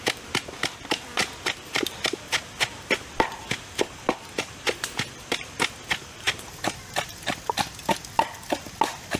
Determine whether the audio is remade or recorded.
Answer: recorded